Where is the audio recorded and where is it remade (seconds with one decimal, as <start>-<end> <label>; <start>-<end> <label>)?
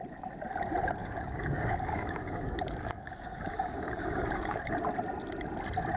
0.0-1.0 recorded; 1.0-4.6 remade; 4.6-6.0 recorded